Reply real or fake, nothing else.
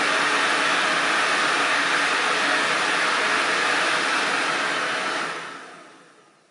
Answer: real